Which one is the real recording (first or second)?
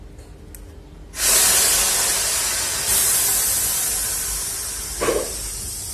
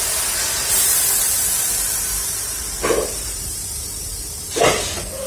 first